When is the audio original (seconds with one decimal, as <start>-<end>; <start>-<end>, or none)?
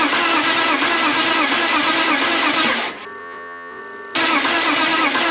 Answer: 0.0-3.2; 3.8-5.3